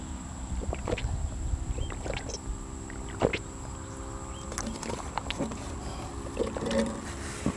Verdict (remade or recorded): recorded